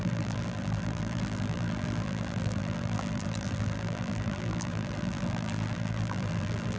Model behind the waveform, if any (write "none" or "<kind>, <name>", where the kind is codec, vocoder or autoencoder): vocoder, BigVGAN v2